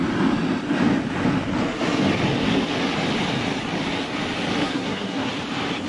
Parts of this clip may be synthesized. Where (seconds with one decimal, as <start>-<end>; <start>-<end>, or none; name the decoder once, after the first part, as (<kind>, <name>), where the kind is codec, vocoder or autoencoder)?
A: 4.6-5.3 (codec, SNAC)